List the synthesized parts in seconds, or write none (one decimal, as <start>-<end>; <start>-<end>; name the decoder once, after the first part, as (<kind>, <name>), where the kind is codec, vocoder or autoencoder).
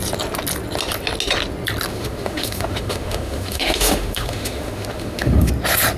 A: 1.9-5.5 (autoencoder, DAC-VAE)